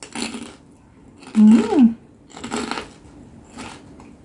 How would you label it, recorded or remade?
recorded